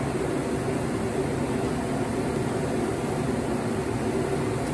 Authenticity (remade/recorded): recorded